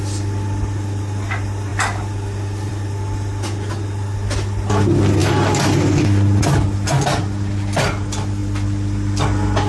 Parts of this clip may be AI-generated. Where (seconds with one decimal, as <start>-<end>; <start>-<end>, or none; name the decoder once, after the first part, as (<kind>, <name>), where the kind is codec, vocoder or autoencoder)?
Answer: none